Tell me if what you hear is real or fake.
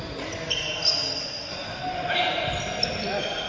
real